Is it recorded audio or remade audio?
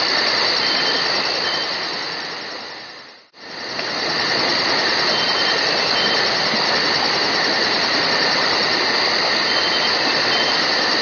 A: recorded